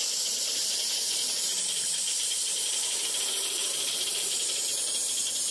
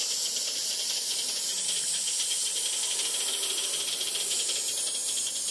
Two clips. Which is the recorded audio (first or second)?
second